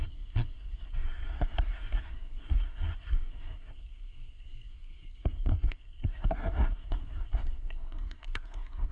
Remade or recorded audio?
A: remade